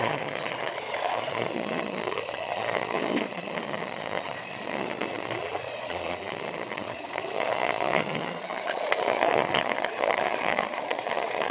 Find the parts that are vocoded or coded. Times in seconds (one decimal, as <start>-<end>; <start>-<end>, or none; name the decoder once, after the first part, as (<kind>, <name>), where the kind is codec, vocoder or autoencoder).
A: 0.0-11.5 (vocoder, Vocos)